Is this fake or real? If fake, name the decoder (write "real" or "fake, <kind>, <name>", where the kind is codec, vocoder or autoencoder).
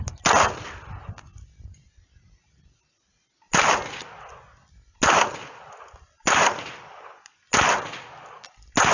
real